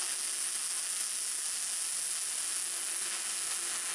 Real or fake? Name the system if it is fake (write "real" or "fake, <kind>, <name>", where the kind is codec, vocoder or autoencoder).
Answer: real